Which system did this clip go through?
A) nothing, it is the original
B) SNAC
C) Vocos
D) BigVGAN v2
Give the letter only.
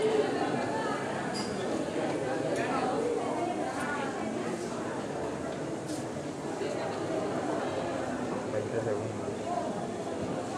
A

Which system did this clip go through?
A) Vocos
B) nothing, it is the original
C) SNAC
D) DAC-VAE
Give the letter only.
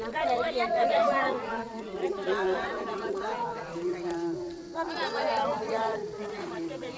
A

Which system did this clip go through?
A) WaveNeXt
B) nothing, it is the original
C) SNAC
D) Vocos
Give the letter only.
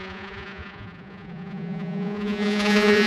D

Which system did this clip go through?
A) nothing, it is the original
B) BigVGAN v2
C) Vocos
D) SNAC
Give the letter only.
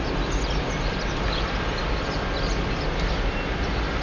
A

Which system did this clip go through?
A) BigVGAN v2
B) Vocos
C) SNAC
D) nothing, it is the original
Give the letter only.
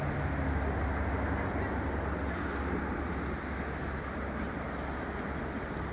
D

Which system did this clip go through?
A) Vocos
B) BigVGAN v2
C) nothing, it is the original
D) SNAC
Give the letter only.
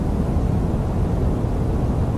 C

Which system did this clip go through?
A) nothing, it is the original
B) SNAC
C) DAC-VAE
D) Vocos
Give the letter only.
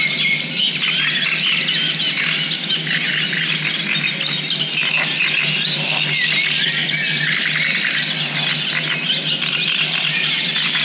A